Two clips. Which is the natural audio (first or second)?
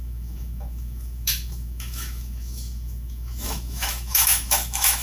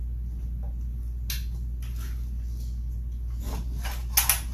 second